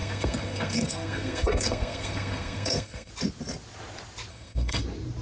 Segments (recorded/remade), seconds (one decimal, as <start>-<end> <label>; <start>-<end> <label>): 0.0-3.1 remade; 3.1-4.3 recorded; 4.3-4.8 remade; 4.8-5.2 recorded